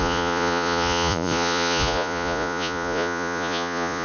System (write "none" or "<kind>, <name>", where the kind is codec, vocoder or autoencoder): vocoder, Vocos